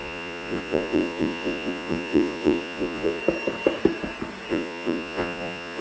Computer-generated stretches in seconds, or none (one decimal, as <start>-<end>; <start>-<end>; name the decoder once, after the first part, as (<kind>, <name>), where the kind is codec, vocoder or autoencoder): 0.0-3.2 (vocoder, Vocos); 4.5-5.8